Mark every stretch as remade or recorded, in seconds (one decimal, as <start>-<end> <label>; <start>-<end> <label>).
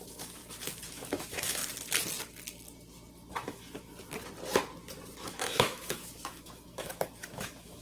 0.0-0.4 remade; 0.4-0.9 recorded; 0.9-1.6 remade; 1.6-3.3 recorded; 3.3-3.9 remade; 3.9-5.3 recorded; 5.3-7.8 remade